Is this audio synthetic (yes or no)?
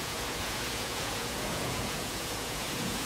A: yes